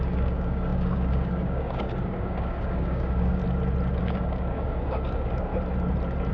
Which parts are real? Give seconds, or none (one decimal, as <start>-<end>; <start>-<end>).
3.4-4.0; 5.5-6.3